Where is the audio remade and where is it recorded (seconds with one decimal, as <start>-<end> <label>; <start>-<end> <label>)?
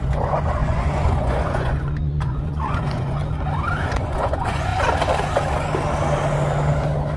0.0-3.2 remade; 3.2-3.8 recorded; 3.8-4.7 remade; 4.7-7.2 recorded